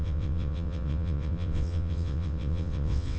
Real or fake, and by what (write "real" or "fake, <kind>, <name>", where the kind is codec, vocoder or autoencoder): fake, vocoder, WaveNeXt